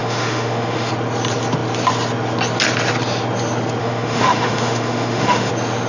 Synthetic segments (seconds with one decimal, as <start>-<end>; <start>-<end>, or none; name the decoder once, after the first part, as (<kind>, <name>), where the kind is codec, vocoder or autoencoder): 0.0-0.9 (autoencoder, DAC-VAE); 3.8-5.5